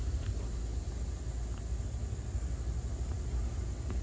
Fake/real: real